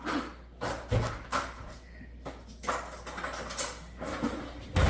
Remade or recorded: recorded